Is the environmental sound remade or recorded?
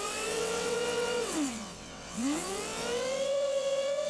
remade